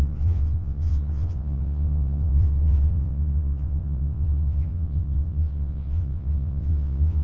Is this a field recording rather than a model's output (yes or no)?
no